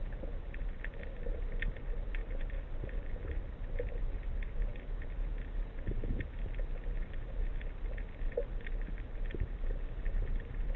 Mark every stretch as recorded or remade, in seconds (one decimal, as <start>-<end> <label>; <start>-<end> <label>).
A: 0.0-10.8 recorded

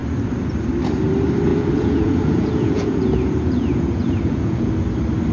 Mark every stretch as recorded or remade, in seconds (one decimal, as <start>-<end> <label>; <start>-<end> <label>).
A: 0.0-1.5 recorded; 1.5-4.7 remade; 4.7-5.3 recorded

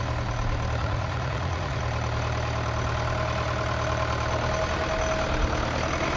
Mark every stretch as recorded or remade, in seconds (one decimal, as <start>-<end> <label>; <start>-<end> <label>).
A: 0.0-0.8 recorded; 0.8-1.8 remade; 1.8-6.2 recorded

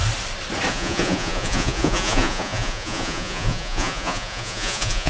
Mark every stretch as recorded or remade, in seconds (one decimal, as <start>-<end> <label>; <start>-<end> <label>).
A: 0.0-0.7 recorded; 0.7-5.1 remade